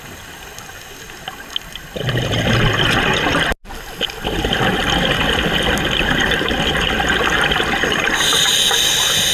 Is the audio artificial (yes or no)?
no